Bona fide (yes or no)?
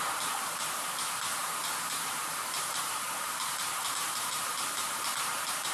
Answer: no